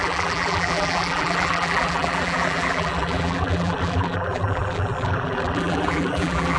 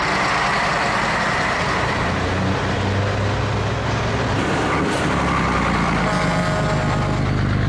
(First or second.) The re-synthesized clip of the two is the first